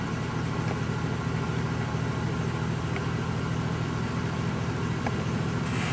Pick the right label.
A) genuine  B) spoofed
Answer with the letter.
A